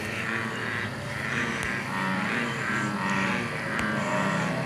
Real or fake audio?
real